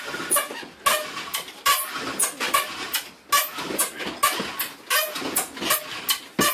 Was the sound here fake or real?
real